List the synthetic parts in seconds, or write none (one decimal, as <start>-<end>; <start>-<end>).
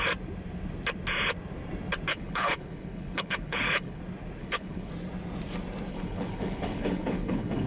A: 2.1-4.0; 4.4-4.9; 5.9-7.7